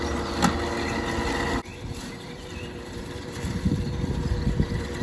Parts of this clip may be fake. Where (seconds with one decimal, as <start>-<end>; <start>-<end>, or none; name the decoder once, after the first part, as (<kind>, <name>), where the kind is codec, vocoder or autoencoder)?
1.7-5.0 (vocoder, BigVGAN v2)